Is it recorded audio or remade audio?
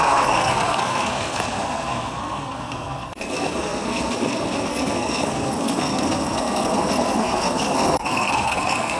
remade